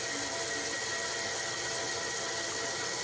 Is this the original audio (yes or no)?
yes